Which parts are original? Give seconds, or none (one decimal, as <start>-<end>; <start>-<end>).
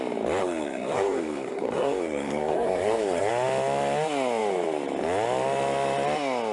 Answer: 0.0-0.4; 3.3-6.5